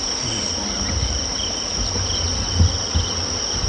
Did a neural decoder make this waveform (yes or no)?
no